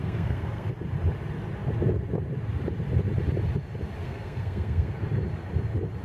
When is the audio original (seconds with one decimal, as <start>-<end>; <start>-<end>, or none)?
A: 0.7-4.0; 5.0-6.0